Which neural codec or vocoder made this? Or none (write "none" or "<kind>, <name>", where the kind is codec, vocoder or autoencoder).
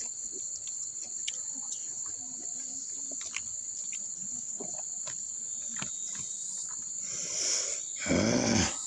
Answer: none